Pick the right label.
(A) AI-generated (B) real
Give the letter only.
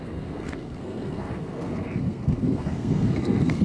A